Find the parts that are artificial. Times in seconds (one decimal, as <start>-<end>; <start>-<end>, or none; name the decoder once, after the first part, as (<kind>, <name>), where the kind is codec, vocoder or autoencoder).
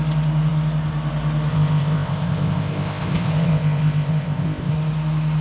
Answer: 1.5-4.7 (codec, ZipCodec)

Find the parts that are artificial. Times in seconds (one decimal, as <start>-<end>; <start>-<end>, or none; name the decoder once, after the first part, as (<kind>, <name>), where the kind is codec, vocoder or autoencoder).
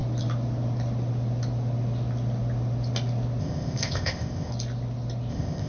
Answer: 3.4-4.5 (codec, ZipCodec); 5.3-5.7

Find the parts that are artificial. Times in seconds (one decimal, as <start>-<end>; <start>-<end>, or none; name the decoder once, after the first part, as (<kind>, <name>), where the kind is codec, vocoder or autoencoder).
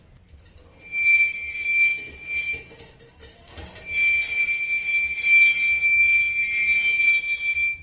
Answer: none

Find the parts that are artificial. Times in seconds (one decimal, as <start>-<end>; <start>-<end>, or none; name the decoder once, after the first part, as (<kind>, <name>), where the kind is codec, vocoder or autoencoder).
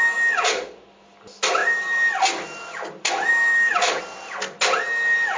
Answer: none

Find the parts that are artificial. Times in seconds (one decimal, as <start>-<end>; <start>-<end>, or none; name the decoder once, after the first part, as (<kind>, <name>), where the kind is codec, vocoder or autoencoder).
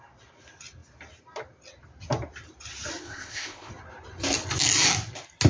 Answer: 3.0-3.7 (codec, ZipCodec)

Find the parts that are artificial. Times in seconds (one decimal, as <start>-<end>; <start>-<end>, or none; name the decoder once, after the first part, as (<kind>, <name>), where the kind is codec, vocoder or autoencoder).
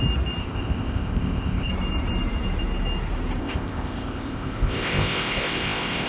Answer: 0.4-1.7 (codec, ZipCodec); 3.4-6.1